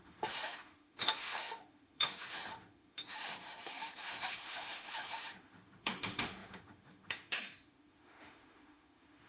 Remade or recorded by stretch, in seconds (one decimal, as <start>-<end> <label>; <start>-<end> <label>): 0.0-9.3 remade